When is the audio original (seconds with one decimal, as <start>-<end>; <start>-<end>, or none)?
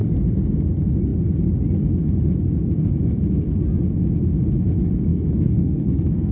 0.0-5.1